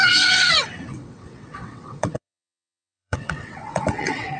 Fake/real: fake